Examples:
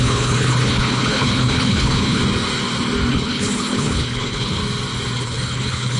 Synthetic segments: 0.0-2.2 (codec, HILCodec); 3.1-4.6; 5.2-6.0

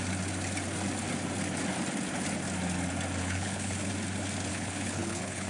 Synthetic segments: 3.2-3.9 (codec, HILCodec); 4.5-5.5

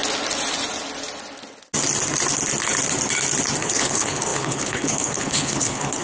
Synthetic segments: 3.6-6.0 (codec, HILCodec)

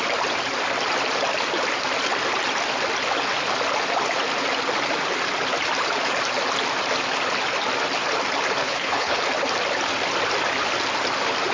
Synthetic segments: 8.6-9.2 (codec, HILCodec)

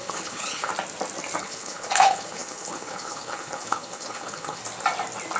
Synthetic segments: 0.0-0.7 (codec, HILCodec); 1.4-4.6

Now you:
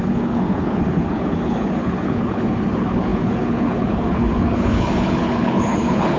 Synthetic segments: 0.0-6.2 (codec, HILCodec)

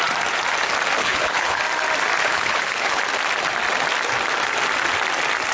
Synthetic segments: 1.0-1.6 (codec, HILCodec); 2.2-3.0